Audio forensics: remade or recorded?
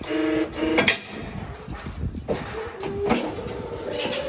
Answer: recorded